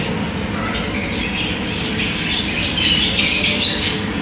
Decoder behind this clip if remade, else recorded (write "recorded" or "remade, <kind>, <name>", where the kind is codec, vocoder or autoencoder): recorded